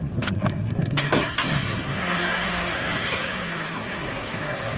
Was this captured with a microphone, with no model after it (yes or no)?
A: no